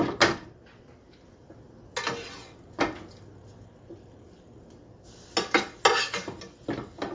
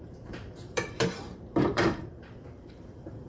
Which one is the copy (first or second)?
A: second